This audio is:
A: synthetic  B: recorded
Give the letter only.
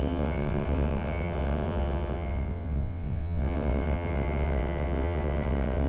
A